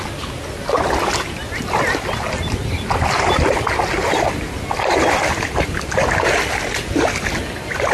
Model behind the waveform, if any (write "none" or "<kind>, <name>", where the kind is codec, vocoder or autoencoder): none